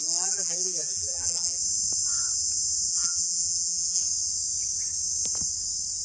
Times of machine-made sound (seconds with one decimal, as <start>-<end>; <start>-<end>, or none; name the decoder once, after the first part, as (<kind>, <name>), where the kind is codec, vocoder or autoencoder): 0.0-1.6 (vocoder, BigVGAN v2); 2.9-4.0